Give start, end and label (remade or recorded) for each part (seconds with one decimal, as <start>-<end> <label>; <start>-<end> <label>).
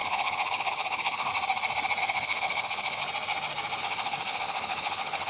0.0-1.3 remade; 1.3-2.0 recorded; 2.0-3.0 remade; 3.0-3.8 recorded; 3.8-5.3 remade